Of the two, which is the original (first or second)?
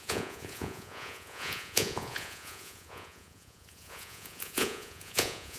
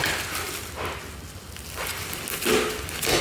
second